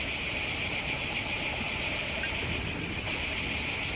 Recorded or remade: recorded